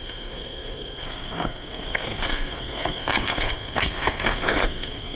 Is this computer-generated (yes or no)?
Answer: yes